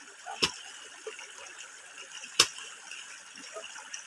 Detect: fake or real real